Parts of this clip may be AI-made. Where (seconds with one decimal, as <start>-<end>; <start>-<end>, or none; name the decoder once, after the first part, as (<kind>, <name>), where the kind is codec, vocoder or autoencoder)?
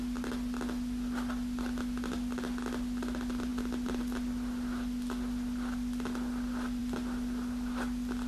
none